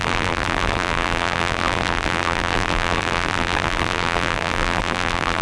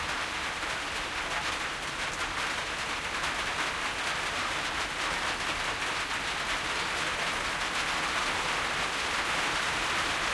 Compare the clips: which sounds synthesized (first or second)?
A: first